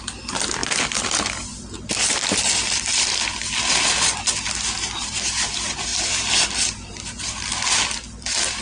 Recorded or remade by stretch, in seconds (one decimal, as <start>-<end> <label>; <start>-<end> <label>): 0.0-8.6 recorded